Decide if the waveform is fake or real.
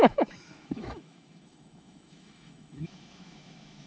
fake